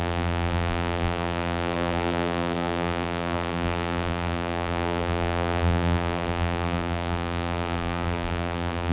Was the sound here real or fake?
fake